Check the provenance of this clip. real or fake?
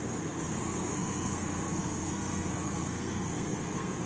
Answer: fake